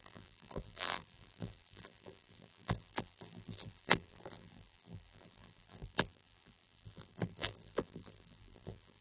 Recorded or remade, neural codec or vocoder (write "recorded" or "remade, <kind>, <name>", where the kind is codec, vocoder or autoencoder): remade, vocoder, BigVGAN v2